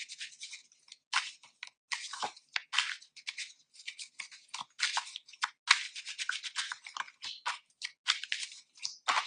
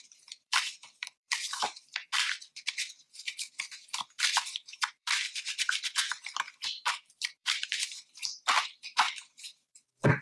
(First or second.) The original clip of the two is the first